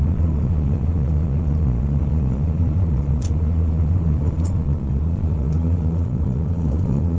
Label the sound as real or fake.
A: fake